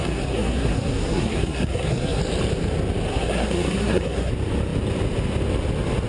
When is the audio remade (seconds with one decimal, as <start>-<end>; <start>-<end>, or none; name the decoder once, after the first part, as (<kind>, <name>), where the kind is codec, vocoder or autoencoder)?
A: 0.0-2.2 (codec, SNAC); 3.1-4.3

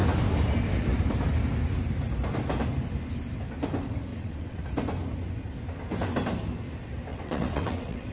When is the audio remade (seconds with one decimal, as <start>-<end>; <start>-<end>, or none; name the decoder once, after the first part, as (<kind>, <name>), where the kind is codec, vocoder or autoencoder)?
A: 4.1-4.6 (vocoder, WaveNeXt); 7.1-8.1